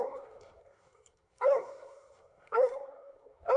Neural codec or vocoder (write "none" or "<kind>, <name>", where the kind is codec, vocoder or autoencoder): codec, SNAC